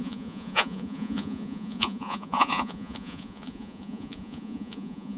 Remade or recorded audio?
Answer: remade